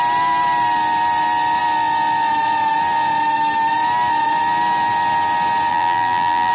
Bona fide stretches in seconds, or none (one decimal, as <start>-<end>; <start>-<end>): 0.0-5.7